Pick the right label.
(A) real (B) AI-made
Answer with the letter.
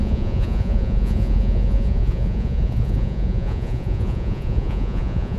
B